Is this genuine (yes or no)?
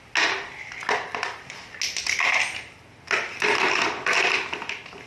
yes